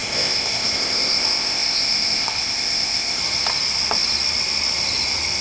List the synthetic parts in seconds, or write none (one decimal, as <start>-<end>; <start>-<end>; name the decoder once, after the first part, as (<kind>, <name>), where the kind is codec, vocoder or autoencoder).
0.0-3.2 (codec, ZipCodec)